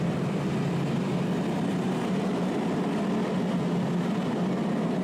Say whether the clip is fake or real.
real